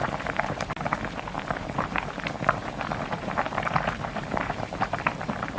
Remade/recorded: remade